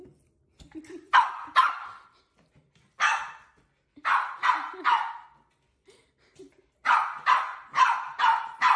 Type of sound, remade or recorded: recorded